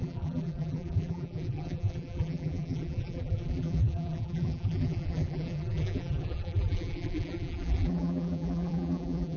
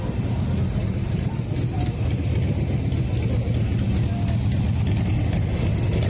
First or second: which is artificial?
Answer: first